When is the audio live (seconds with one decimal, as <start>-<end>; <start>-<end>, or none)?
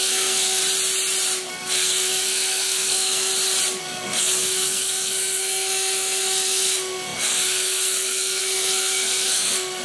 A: 0.6-1.5; 3.3-3.8